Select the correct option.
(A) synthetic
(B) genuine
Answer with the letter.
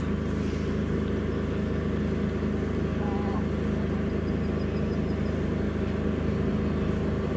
B